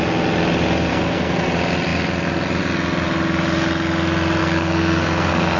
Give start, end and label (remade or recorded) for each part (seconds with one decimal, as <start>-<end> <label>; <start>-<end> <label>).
0.0-0.9 recorded; 0.9-1.5 remade; 1.5-4.4 recorded; 4.4-5.6 remade